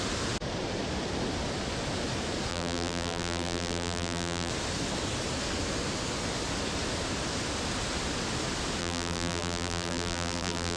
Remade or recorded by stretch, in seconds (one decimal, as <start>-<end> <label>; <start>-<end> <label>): 0.0-2.5 recorded; 2.5-4.5 remade; 4.5-8.8 recorded; 8.8-10.8 remade